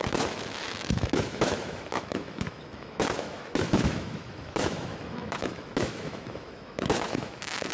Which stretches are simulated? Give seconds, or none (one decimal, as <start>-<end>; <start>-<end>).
0.0-7.7

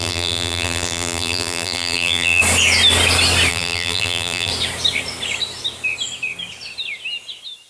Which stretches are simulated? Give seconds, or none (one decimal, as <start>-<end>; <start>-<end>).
0.0-2.4; 3.5-4.5

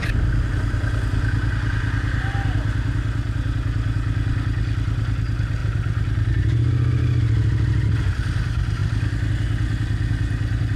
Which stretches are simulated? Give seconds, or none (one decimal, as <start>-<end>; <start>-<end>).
none

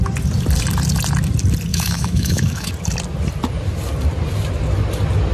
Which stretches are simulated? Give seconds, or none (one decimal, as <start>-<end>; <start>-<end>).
1.7-2.7

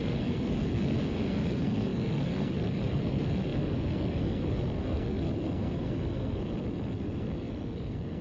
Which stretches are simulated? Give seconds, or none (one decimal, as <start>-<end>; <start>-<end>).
0.0-8.2

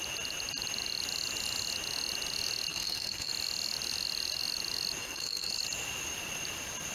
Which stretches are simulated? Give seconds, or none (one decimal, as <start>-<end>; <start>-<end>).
2.7-3.3; 5.0-5.5

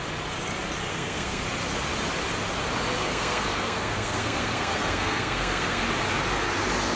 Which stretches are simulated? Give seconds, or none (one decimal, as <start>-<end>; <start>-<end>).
0.9-1.4; 3.0-5.8

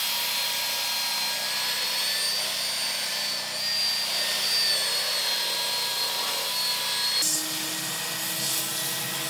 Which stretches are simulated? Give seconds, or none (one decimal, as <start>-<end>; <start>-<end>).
none